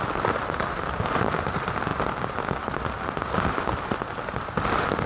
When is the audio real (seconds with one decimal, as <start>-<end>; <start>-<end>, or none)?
0.0-5.1